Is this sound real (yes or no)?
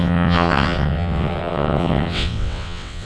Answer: no